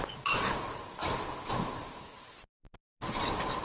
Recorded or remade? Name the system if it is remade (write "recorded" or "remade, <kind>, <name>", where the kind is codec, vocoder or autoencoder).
recorded